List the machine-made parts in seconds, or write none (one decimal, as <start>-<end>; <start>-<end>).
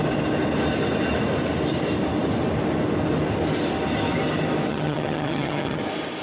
4.7-5.8